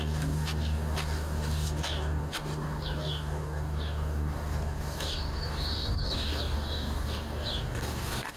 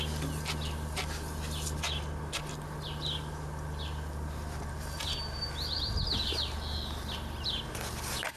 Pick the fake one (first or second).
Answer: first